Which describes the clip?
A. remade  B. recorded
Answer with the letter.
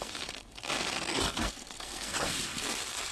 A